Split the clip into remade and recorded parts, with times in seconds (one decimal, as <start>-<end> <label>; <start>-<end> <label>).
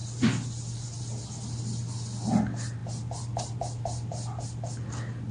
0.0-5.3 recorded